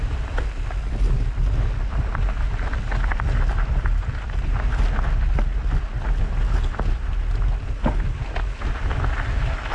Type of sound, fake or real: real